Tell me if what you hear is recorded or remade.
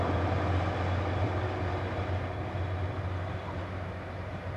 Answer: recorded